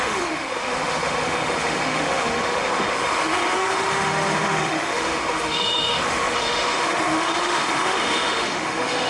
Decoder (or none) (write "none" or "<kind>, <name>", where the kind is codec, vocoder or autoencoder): autoencoder, DAC-VAE